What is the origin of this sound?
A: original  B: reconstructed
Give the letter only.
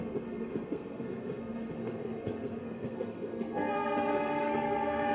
B